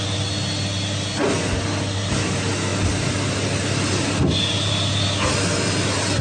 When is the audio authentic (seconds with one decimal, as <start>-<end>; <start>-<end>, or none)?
0.0-6.2

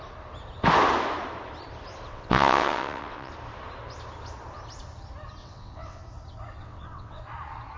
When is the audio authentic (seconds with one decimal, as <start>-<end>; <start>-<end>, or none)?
0.0-2.1; 3.3-5.4; 6.0-6.6; 7.2-7.8

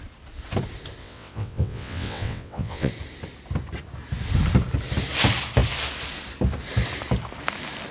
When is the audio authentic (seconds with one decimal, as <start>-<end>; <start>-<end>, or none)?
0.0-1.0; 2.9-7.9

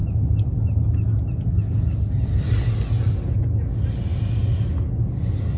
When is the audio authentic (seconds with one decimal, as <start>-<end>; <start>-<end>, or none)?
0.0-5.6